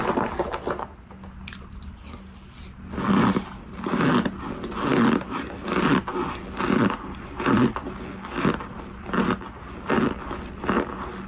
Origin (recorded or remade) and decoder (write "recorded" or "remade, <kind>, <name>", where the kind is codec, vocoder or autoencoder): recorded